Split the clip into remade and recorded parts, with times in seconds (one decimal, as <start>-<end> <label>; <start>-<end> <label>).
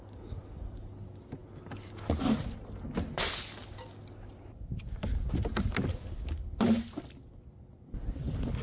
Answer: 0.0-8.6 recorded